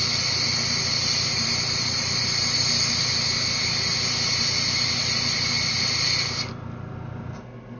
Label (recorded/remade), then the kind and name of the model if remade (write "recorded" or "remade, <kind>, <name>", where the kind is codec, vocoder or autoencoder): recorded